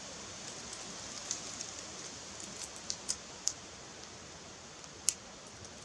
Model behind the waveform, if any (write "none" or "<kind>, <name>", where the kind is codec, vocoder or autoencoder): none